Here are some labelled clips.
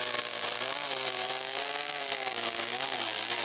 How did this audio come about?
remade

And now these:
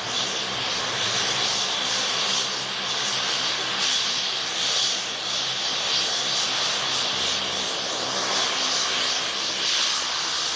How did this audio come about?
recorded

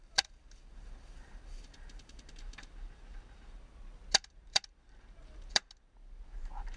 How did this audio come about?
recorded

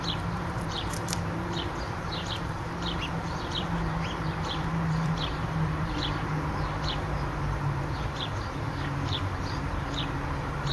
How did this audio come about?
remade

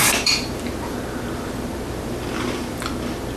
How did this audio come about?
remade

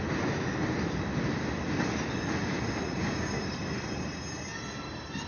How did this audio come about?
recorded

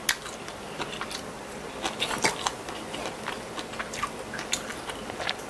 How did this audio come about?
recorded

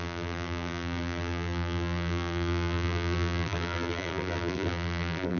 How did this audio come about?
remade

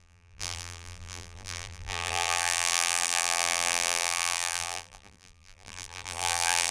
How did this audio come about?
remade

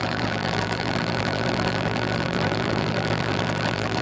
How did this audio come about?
remade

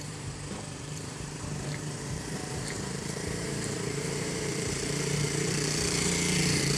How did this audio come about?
remade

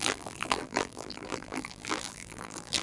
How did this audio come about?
remade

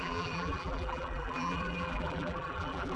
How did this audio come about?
remade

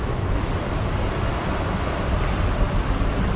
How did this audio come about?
remade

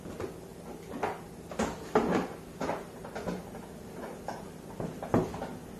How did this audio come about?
recorded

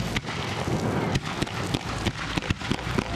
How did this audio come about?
recorded